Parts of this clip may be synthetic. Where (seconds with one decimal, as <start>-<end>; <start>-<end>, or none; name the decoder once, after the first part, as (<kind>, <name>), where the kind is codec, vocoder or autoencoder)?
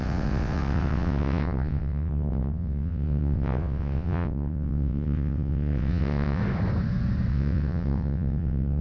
0.0-6.4 (vocoder, WaveNeXt); 7.3-8.8